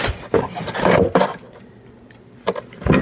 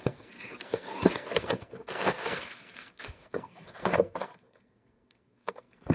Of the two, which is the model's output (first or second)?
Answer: second